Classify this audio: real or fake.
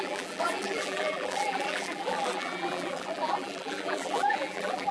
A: fake